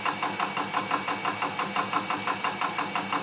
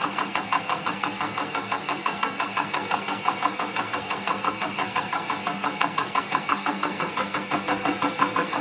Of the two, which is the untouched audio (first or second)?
first